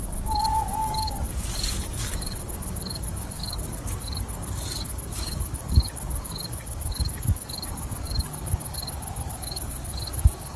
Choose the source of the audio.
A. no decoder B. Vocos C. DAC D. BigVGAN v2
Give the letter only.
C